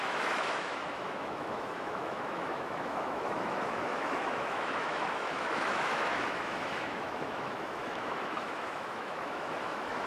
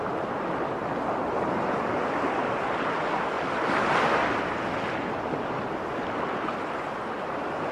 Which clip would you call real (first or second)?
second